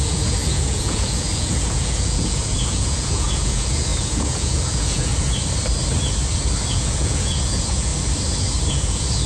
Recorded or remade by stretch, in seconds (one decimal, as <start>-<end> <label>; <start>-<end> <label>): 0.0-5.1 remade; 5.1-6.7 recorded; 6.7-7.9 remade; 7.9-8.7 recorded; 8.7-9.3 remade